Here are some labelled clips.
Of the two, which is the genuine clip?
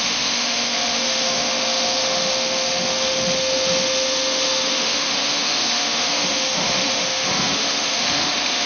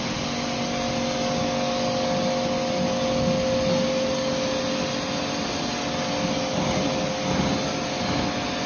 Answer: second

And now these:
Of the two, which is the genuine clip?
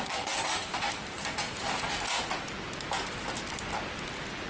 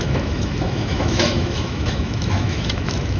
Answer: first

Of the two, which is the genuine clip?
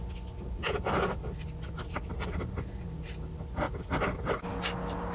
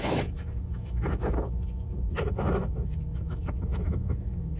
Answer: first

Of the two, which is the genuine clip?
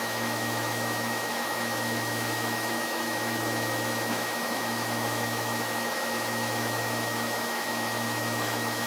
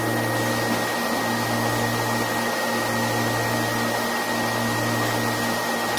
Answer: second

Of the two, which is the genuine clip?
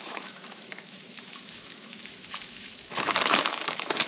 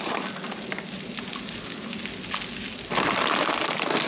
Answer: second